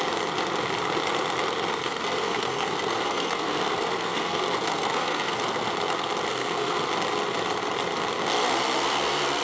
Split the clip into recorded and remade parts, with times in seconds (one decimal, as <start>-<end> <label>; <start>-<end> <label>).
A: 0.0-1.7 recorded; 1.7-5.7 remade; 5.7-6.3 recorded; 6.3-6.9 remade; 6.9-9.4 recorded